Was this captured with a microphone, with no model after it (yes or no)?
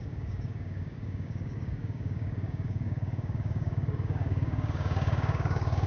no